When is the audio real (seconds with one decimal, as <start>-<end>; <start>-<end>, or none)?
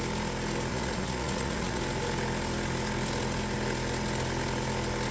0.0-0.7; 1.8-5.1